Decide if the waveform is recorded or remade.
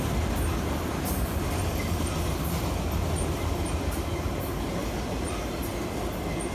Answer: recorded